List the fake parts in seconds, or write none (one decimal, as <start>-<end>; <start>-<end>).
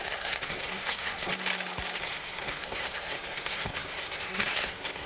0.0-1.3; 2.0-5.1